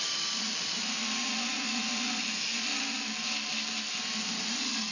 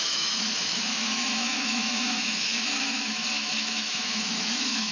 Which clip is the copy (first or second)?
second